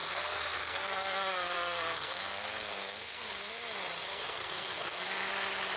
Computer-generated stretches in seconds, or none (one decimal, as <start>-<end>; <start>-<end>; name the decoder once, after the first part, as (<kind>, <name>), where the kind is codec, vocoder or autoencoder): 0.0-3.5 (codec, SNAC); 4.1-5.3